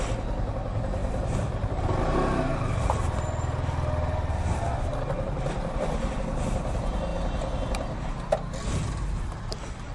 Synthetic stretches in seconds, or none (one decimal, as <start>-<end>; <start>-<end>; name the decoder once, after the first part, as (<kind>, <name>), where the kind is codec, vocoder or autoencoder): none